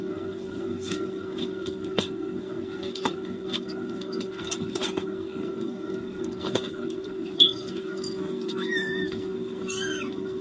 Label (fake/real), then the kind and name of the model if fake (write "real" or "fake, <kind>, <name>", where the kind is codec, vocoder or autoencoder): fake, codec, SNAC